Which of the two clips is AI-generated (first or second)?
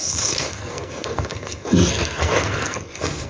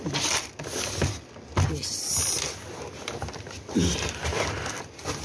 first